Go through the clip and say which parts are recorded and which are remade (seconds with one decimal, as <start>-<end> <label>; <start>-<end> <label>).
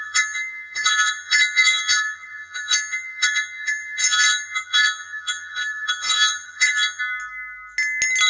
0.0-7.0 remade; 7.0-8.3 recorded